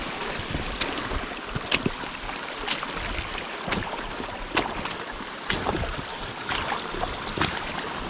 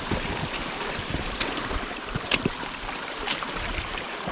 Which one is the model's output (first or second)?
second